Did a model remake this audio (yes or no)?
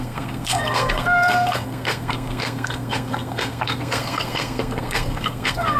yes